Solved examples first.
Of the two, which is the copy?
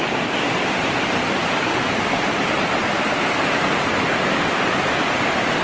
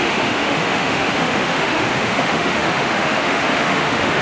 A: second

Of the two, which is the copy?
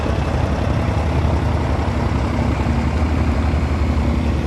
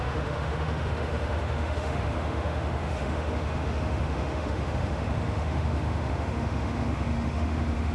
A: second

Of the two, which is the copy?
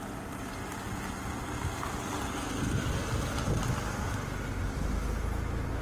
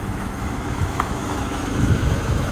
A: second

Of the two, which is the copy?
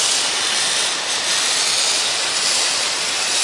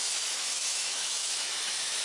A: second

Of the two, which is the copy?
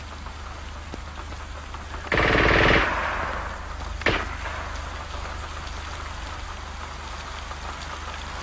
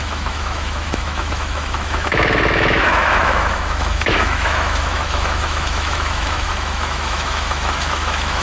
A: second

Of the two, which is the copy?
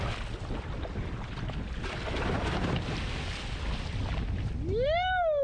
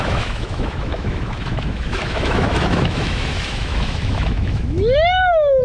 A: second